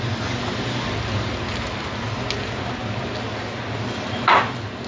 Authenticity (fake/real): real